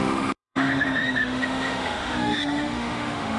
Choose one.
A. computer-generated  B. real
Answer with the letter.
A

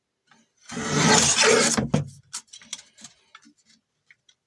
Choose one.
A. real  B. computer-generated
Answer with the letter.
A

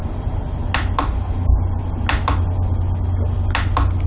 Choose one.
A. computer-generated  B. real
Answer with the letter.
B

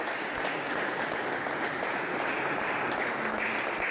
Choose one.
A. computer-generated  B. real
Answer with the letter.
B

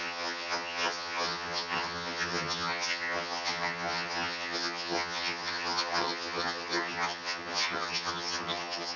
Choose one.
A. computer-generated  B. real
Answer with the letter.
A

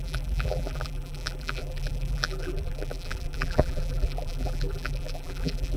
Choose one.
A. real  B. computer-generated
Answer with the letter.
B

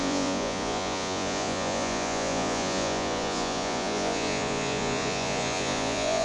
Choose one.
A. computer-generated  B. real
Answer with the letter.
A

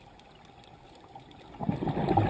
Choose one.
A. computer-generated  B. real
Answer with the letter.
B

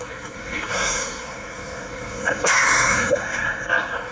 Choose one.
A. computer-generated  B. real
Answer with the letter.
A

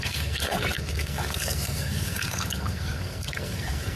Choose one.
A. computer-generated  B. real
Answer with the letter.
A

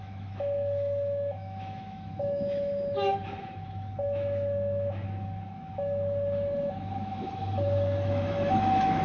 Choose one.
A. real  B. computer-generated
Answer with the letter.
B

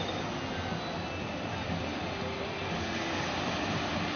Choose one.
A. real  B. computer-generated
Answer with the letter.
A